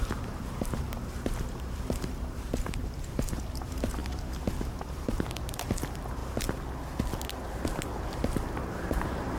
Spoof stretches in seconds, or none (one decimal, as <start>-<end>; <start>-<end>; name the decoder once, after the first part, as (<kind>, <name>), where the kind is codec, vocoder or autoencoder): 0.0-4.0 (vocoder, BigVGAN v2); 4.7-6.2; 8.1-9.4